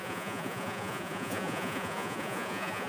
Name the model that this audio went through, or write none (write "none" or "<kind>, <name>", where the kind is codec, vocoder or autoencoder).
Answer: vocoder, Vocos